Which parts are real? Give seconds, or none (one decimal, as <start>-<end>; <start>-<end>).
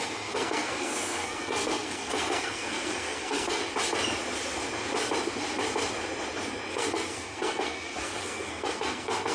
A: 3.6-6.7